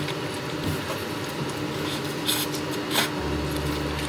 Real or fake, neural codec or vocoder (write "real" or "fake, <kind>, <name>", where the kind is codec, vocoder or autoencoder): real